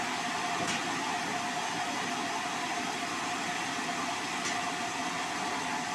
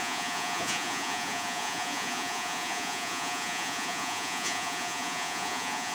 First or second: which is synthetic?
second